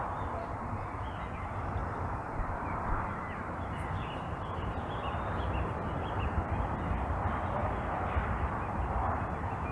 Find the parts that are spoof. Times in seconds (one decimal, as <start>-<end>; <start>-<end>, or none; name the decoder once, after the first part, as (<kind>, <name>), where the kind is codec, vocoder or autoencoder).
1.8-6.3 (vocoder, BigVGAN v2)